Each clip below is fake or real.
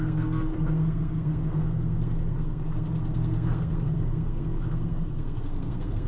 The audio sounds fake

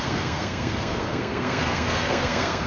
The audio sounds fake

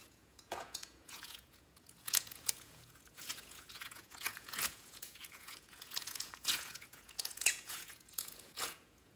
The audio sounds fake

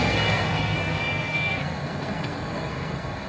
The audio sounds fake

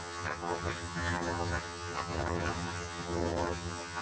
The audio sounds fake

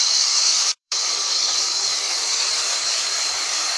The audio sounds fake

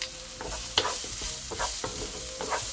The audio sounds real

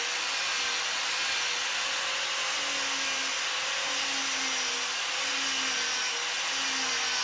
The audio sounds real